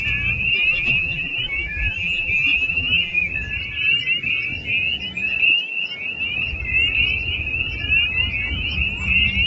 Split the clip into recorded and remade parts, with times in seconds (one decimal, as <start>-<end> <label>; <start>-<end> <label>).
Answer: 0.0-0.5 recorded; 0.5-3.3 remade; 3.3-9.5 recorded